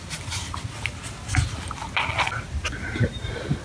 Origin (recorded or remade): recorded